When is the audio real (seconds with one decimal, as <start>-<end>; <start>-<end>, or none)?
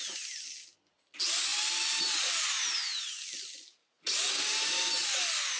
0.0-3.8; 4.3-5.6